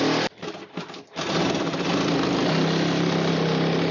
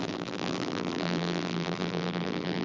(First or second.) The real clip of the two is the first